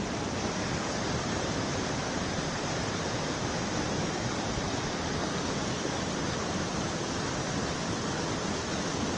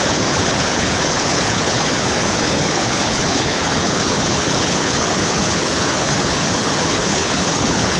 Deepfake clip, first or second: second